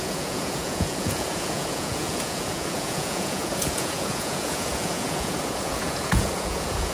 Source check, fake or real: fake